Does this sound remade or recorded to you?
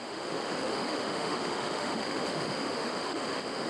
remade